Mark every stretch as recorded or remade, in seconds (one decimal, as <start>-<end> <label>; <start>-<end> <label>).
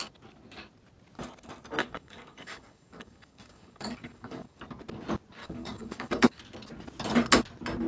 0.0-1.8 recorded; 1.8-4.6 remade; 4.6-5.4 recorded; 5.4-6.4 remade; 6.4-7.9 recorded